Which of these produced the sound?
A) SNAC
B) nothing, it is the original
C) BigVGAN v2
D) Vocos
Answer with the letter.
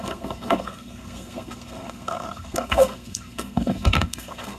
A